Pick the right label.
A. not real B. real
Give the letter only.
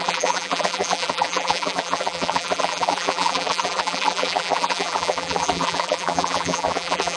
A